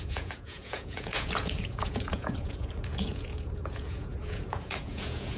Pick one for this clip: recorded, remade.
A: remade